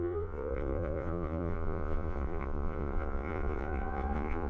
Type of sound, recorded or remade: remade